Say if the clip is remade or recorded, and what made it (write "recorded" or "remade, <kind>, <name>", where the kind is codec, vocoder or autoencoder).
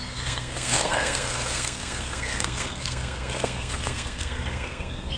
remade, codec, SNAC